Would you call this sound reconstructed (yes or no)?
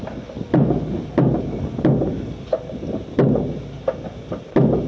no